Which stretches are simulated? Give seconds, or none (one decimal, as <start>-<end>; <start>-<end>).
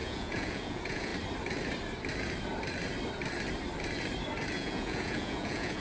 0.0-1.1; 4.5-5.8